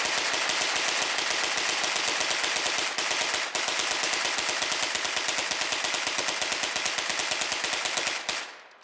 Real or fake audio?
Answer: real